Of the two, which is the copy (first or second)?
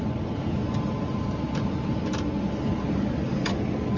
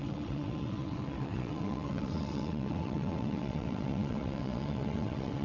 second